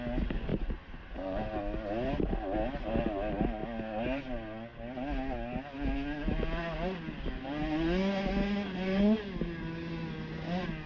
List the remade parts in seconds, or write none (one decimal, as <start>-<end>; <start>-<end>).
0.5-1.6

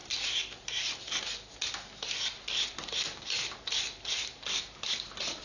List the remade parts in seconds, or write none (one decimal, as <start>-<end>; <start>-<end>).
none

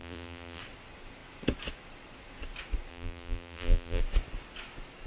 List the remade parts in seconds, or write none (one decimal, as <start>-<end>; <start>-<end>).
0.0-0.6; 2.9-4.0

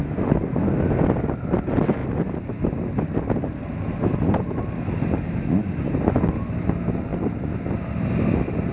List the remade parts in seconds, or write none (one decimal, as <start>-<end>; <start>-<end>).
0.0-0.6

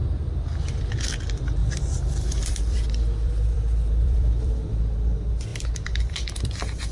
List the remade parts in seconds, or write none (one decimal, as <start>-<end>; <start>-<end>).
1.6-4.7; 5.5-6.9